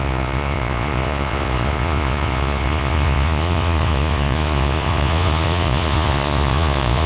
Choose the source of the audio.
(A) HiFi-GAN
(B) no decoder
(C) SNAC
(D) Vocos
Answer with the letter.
D